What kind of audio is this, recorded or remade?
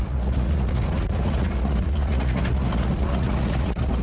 remade